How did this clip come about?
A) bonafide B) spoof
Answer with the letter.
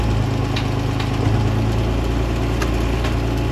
A